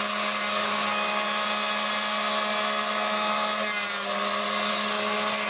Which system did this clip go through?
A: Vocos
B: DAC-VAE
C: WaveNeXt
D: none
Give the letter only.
D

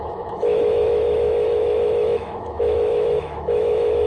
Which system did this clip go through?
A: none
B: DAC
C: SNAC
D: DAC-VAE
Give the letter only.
D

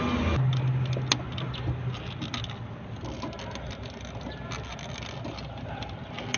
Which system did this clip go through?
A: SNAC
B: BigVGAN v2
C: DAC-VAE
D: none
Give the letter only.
D